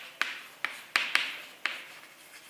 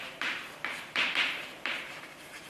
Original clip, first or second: first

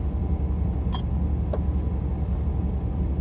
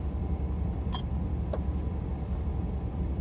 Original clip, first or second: first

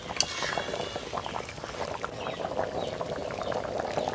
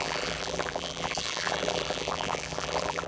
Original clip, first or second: first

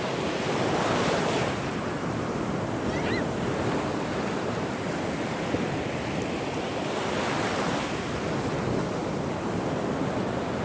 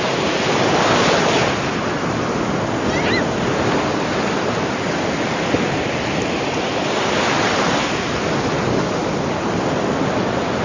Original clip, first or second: second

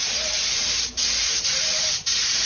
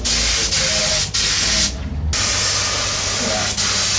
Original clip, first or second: second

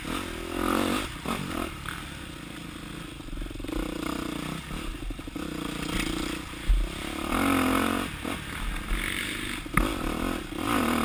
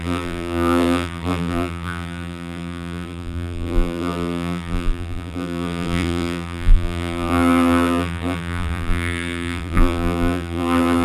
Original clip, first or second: first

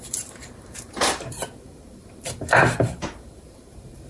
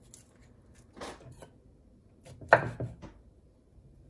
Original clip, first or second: second